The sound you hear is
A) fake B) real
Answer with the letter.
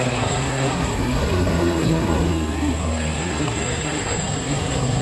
A